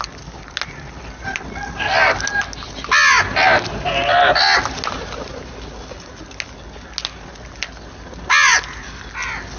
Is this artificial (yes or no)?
no